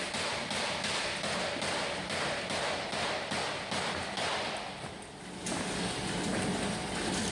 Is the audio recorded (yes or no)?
yes